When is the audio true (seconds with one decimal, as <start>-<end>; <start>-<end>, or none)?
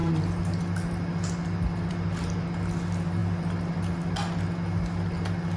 0.0-5.6